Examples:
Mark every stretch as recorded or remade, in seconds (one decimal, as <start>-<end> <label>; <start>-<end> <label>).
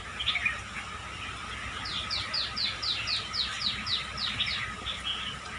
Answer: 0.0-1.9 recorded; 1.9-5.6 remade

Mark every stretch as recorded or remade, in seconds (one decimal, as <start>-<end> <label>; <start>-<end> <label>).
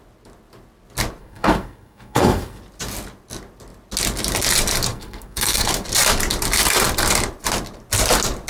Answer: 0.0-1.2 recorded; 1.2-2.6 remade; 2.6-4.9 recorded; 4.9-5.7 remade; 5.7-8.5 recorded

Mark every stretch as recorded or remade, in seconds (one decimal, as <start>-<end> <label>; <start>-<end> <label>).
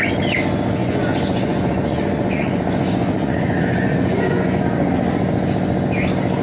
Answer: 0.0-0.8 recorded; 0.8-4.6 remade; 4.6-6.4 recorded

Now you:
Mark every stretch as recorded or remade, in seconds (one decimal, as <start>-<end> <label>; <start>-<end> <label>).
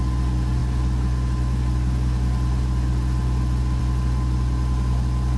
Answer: 0.0-5.4 recorded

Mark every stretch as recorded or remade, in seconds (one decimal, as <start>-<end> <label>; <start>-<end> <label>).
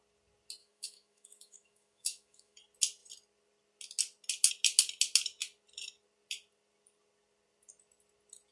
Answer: 0.0-0.6 recorded; 0.6-2.6 remade; 2.6-8.5 recorded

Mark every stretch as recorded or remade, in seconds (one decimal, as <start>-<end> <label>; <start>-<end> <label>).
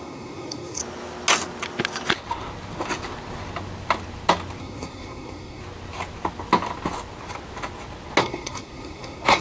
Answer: 0.0-0.8 remade; 0.8-4.6 recorded; 4.6-5.6 remade; 5.6-8.2 recorded; 8.2-9.4 remade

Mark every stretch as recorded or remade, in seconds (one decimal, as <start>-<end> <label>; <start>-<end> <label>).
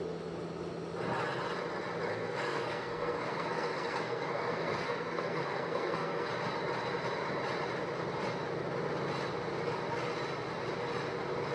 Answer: 0.0-2.1 recorded; 2.1-6.3 remade; 6.3-11.5 recorded